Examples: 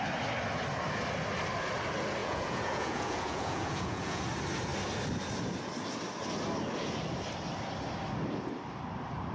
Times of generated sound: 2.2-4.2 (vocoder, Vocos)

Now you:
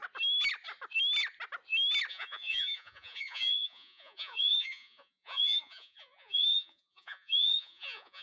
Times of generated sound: 2.1-8.2 (vocoder, Vocos)

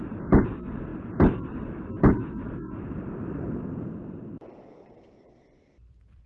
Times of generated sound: 0.0-6.3 (vocoder, BigVGAN v2)